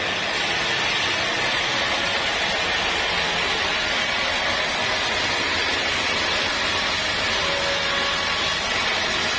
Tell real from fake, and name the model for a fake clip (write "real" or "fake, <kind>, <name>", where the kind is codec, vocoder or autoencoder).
real